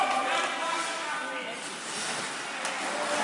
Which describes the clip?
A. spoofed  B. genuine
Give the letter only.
B